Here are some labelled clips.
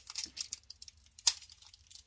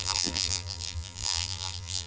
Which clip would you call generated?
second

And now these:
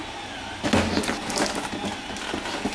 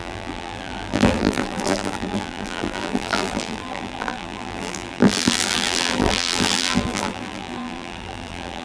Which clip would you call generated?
second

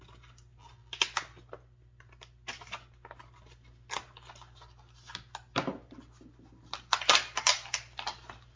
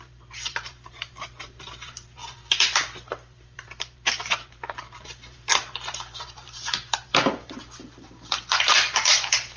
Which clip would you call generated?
second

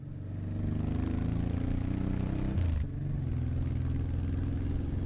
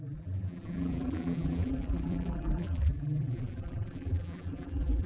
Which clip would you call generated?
second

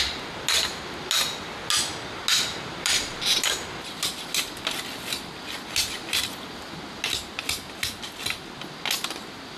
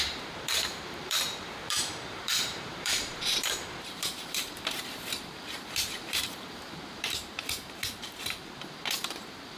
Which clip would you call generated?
second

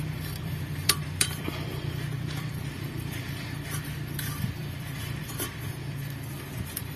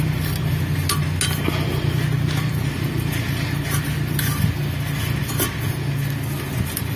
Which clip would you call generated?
first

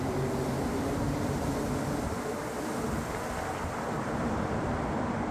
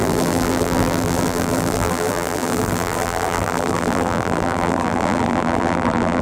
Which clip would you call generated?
second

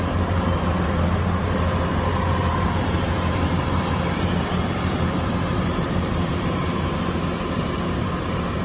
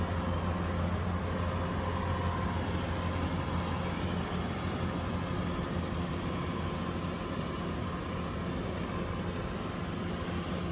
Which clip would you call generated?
first